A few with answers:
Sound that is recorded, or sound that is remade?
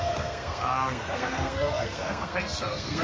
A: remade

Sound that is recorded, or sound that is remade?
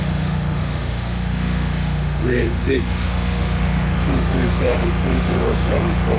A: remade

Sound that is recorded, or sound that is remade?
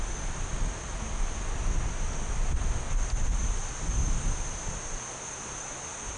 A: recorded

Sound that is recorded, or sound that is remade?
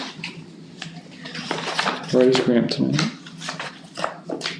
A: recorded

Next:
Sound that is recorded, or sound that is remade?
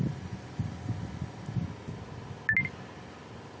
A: recorded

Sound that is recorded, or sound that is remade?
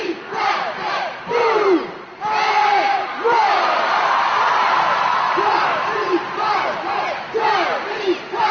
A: remade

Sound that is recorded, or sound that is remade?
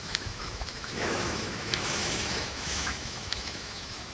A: remade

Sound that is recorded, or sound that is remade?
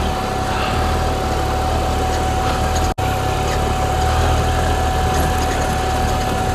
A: recorded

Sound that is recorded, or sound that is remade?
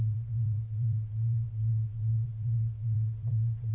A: remade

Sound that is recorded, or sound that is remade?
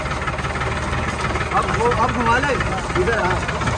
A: recorded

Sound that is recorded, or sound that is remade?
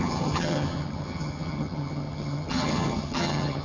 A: remade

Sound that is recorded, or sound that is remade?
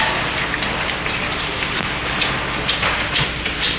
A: recorded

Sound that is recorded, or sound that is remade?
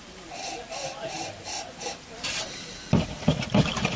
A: remade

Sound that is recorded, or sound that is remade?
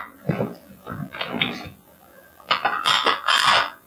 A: remade